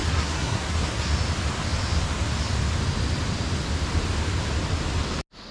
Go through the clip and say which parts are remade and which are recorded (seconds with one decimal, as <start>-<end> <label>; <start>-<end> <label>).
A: 0.0-1.1 remade; 1.1-5.5 recorded